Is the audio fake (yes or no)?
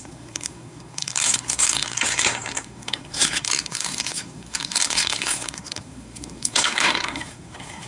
yes